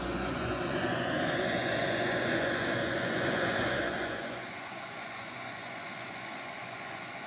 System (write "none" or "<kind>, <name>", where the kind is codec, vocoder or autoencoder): vocoder, Vocos